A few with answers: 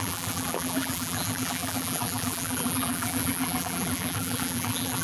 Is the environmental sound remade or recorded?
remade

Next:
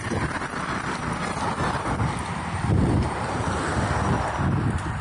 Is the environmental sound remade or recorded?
recorded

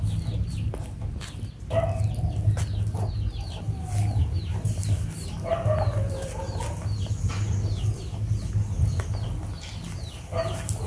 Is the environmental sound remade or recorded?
recorded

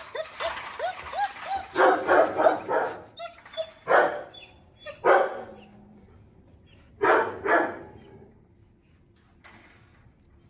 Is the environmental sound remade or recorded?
recorded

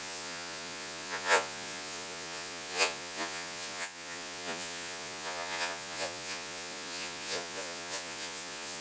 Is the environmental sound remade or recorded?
remade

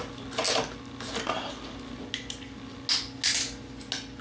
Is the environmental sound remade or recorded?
recorded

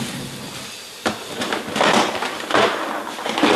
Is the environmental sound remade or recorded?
recorded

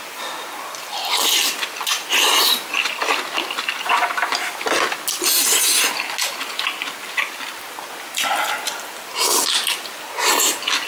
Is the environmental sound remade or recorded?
recorded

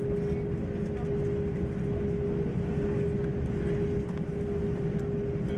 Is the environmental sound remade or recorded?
recorded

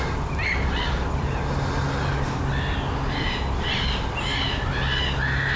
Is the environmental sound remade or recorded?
recorded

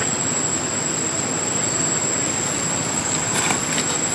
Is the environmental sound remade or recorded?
recorded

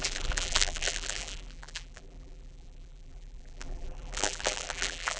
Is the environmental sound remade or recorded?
remade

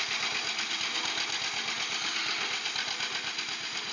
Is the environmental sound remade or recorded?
recorded